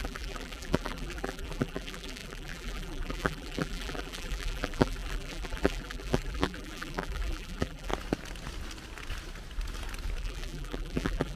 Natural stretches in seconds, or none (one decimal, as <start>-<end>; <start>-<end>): 7.9-10.2